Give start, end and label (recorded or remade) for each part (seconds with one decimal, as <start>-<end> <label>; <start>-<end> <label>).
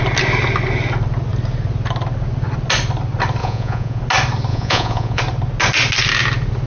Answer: 0.0-3.4 recorded; 3.4-4.0 remade; 4.0-4.5 recorded; 4.5-5.2 remade; 5.2-6.7 recorded